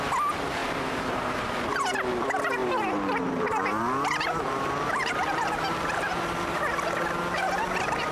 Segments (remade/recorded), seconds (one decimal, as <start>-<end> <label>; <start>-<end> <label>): 0.0-0.6 recorded; 0.6-1.7 remade; 1.7-2.6 recorded; 2.6-6.1 remade; 6.1-8.1 recorded

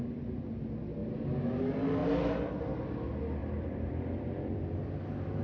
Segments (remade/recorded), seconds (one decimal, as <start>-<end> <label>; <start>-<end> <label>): 0.0-2.0 recorded; 2.0-2.6 remade; 2.6-3.4 recorded; 3.4-4.9 remade; 4.9-5.4 recorded

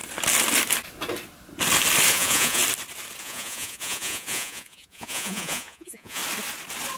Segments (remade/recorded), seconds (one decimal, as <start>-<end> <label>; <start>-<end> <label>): 0.0-2.1 recorded; 2.1-2.6 remade; 2.6-3.2 recorded; 3.2-6.2 remade; 6.2-7.0 recorded

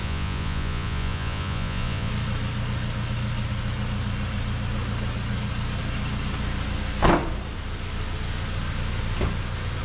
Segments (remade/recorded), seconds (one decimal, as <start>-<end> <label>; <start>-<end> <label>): 0.0-2.1 remade; 2.1-9.8 recorded

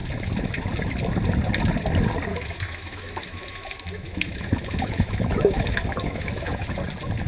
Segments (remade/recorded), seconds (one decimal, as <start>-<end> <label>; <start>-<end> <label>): 0.0-2.3 recorded; 2.3-6.7 remade; 6.7-7.3 recorded

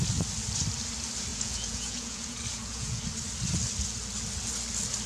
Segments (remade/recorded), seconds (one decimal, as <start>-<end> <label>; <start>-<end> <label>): 0.0-1.3 recorded; 1.3-3.0 remade; 3.0-5.1 recorded

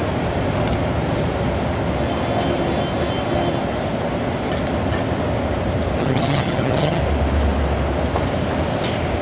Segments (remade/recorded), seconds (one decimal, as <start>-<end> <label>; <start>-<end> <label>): 0.0-6.0 recorded; 6.0-7.0 remade; 7.0-9.2 recorded

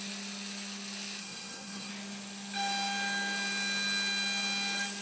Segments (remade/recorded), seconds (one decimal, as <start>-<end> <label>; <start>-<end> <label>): 0.0-1.2 recorded; 1.2-1.9 remade; 1.9-5.0 recorded